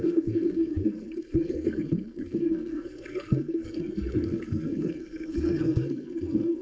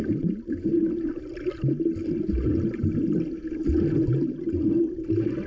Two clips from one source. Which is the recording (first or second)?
second